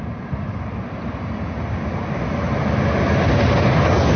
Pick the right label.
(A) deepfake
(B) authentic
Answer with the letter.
B